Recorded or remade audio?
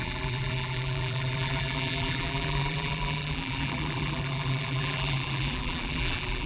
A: remade